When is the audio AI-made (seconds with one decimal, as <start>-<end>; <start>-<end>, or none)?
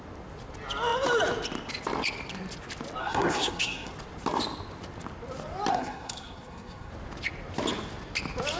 3.0-3.9; 5.7-6.9